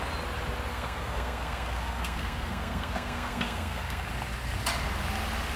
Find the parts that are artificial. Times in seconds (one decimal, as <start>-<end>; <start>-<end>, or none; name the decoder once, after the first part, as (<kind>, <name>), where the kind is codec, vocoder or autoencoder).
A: 0.7-4.1 (codec, SNAC)